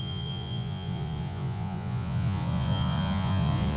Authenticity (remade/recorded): remade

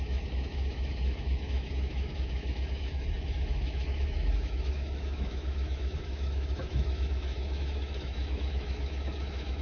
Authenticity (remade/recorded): remade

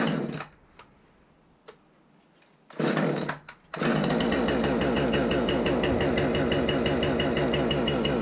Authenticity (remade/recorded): recorded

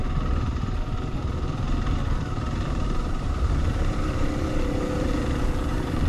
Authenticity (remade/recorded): remade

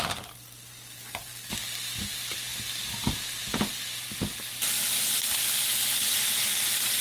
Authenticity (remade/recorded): recorded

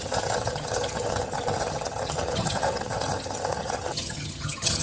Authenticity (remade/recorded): remade